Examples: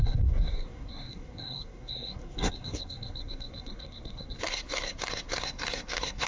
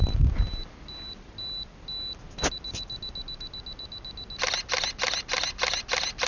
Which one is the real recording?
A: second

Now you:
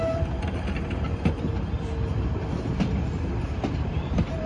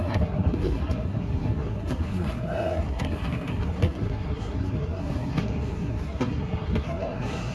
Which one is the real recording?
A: first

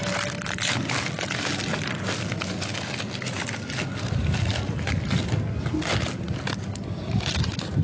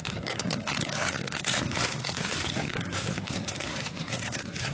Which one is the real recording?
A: first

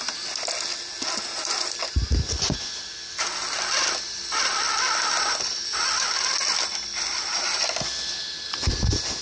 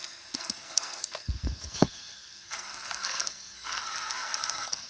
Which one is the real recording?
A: first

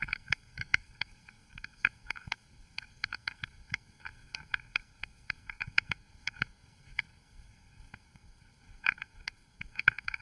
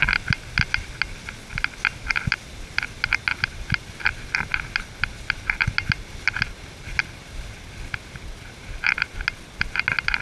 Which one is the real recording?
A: second